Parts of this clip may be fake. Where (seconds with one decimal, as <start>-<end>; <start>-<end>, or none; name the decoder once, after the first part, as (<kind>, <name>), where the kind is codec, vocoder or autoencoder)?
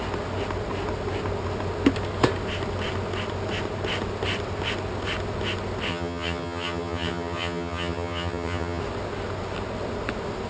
5.9-8.8 (vocoder, HiFi-GAN)